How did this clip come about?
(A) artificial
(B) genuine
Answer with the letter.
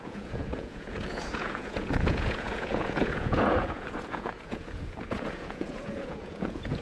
A